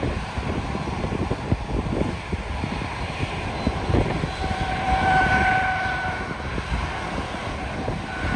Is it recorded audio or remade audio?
recorded